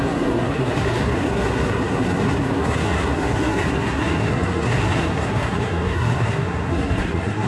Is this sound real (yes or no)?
no